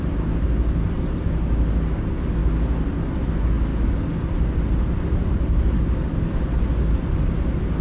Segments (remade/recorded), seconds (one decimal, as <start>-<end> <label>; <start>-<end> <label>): 0.0-7.8 recorded

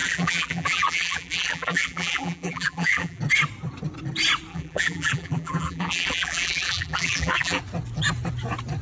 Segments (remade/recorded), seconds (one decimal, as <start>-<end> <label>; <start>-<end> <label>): 0.0-3.2 remade; 3.2-4.5 recorded; 4.5-7.6 remade; 7.6-8.8 recorded